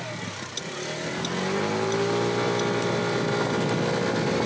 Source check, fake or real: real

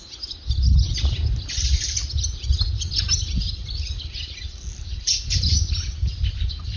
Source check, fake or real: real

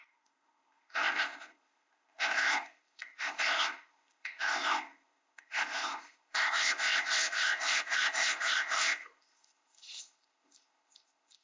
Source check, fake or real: fake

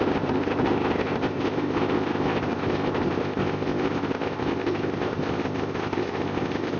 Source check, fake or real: fake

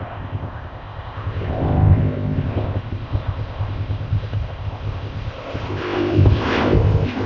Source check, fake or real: fake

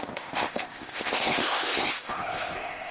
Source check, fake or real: fake